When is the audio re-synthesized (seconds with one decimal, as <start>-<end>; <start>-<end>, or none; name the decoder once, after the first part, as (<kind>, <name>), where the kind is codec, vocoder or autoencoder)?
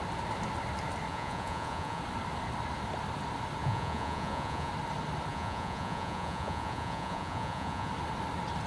1.1-2.0 (vocoder, Vocos); 3.6-4.7; 5.3-7.9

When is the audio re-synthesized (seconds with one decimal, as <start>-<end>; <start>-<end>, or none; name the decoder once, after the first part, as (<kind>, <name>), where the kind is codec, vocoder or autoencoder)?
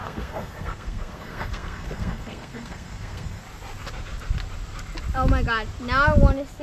0.0-3.4 (codec, SNAC)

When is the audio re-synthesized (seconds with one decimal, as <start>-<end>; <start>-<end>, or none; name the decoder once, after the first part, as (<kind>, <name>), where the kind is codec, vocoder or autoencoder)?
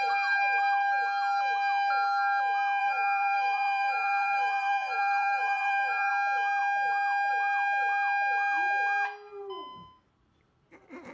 2.8-6.1 (vocoder, BigVGAN v2)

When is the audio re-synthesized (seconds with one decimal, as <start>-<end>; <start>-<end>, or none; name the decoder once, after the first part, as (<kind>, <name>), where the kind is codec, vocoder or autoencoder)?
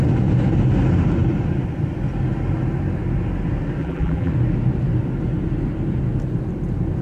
3.8-4.3 (vocoder, BigVGAN v2)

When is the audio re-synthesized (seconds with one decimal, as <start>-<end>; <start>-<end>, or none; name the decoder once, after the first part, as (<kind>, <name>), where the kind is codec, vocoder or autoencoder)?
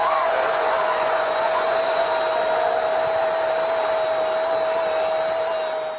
0.0-2.1 (vocoder, Vocos)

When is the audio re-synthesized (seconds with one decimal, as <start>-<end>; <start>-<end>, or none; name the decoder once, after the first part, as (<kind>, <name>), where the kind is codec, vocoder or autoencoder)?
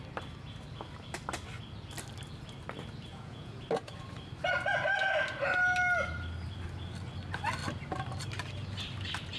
3.1-3.6 (vocoder, Vocos)